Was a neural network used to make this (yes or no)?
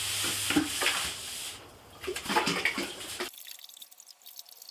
no